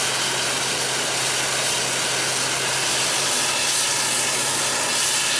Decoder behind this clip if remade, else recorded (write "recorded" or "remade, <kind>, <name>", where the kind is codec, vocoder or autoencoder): recorded